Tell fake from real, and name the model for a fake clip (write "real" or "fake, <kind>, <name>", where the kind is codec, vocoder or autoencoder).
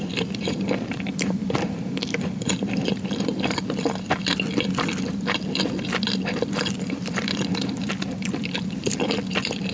fake, vocoder, BigVGAN v2